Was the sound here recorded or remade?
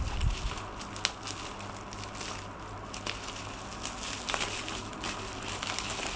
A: recorded